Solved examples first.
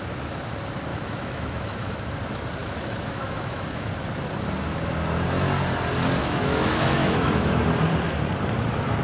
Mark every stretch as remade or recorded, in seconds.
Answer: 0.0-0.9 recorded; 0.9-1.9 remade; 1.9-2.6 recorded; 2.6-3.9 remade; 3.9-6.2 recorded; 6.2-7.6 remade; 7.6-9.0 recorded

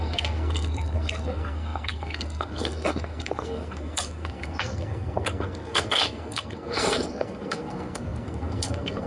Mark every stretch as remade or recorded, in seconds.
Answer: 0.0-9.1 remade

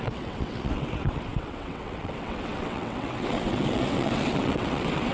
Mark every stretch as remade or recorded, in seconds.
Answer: 0.0-5.1 remade